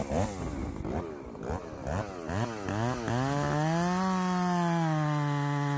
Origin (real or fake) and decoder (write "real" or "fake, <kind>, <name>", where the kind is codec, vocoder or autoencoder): real